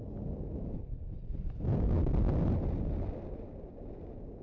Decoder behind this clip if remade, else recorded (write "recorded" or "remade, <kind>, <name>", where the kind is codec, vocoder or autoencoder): recorded